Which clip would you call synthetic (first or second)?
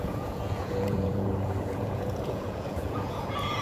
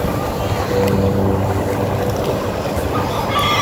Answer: first